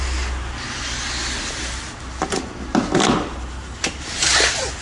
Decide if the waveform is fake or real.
real